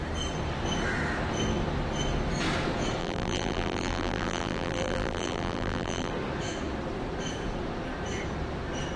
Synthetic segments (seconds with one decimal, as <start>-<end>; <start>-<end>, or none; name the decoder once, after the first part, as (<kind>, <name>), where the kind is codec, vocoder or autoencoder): 3.0-6.1 (vocoder, BigVGAN v2)